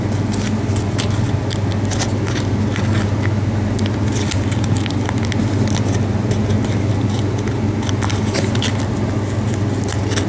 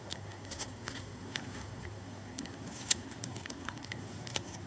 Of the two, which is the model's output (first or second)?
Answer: second